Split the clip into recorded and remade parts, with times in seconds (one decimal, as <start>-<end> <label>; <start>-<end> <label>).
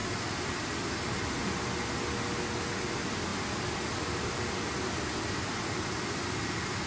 0.0-0.5 remade; 0.5-3.3 recorded; 3.3-6.9 remade